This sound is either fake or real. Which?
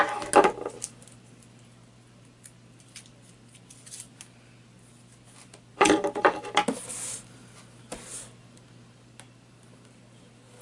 real